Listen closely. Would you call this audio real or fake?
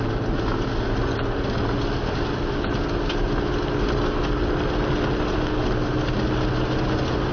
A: real